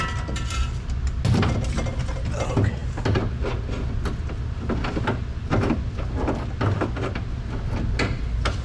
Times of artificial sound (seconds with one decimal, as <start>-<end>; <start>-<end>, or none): none